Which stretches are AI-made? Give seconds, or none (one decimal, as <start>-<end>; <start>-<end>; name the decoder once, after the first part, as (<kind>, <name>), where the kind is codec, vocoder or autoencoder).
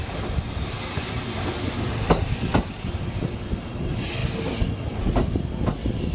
0.0-3.5 (vocoder, BigVGAN v2); 4.2-5.0